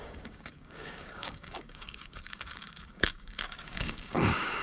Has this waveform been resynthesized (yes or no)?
yes